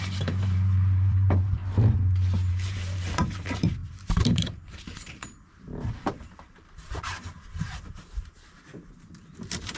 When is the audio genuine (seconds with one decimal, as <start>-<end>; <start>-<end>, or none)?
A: 1.6-2.5